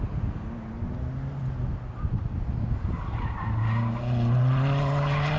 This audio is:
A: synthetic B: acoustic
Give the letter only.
B